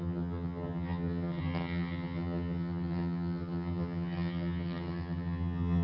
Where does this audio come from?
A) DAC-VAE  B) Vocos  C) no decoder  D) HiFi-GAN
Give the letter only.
D